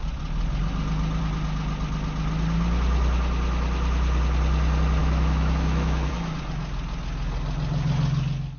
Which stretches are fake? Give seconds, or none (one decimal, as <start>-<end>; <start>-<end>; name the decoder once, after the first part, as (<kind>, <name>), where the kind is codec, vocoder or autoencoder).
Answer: 5.0-6.1 (autoencoder, DAC-VAE)